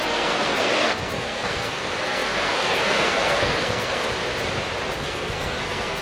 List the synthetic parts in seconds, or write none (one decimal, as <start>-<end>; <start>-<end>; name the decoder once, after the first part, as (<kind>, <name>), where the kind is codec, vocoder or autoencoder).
0.0-4.0 (codec, SNAC); 5.0-6.0